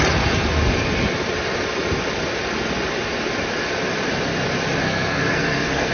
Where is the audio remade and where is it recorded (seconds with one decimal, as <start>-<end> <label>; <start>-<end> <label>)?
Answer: 0.0-4.8 recorded; 4.8-5.9 remade